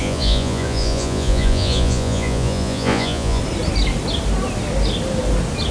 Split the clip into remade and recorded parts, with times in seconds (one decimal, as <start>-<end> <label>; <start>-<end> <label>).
0.0-3.4 remade; 3.4-5.7 recorded